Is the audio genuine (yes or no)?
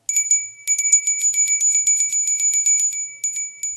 yes